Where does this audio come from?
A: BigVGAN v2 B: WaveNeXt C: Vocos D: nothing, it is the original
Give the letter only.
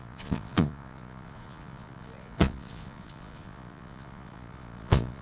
C